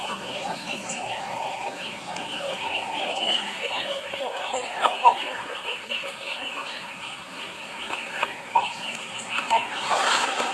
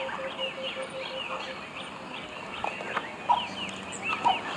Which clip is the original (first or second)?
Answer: second